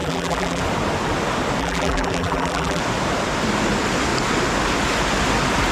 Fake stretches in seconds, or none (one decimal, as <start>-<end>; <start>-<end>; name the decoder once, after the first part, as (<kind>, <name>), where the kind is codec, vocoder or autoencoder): 0.0-0.6 (vocoder, BigVGAN v2); 1.6-2.8